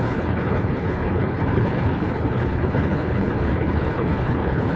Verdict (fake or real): fake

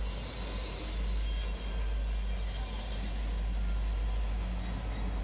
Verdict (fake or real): real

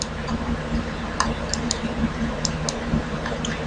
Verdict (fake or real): fake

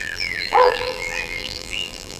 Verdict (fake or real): fake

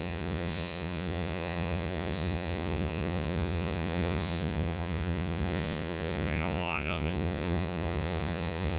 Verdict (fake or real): fake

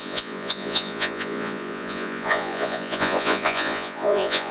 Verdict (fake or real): fake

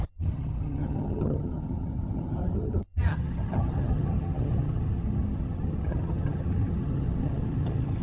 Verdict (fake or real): fake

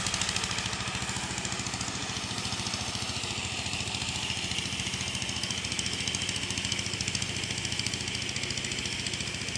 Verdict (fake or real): real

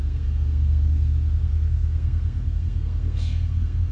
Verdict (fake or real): fake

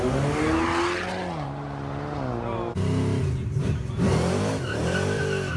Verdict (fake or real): real